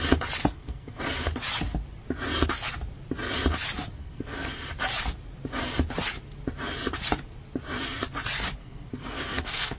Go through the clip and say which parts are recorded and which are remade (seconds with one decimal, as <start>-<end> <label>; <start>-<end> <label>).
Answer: 0.0-0.4 recorded; 0.4-1.0 remade; 1.0-4.0 recorded; 4.0-4.5 remade; 4.5-8.6 recorded; 8.6-9.8 remade